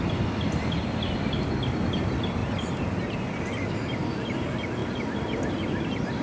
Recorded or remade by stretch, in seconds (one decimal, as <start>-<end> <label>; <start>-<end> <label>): 0.0-6.2 recorded